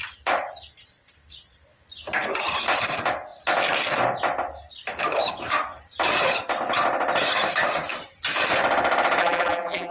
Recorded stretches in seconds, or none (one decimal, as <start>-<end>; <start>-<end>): 0.0-9.2